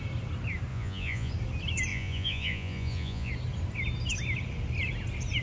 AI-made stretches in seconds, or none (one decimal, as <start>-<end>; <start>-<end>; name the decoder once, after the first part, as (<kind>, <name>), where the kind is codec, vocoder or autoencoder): 0.7-1.3 (vocoder, Vocos); 1.9-3.3